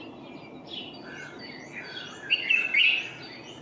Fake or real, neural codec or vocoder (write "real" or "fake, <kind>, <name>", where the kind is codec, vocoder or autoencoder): real